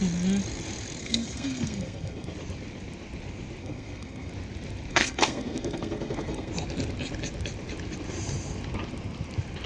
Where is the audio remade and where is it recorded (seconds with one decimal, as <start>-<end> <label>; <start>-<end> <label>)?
0.0-1.0 recorded; 1.0-2.3 remade; 2.3-3.6 recorded; 3.6-4.3 remade; 4.3-4.9 recorded; 4.9-6.5 remade; 6.5-9.7 recorded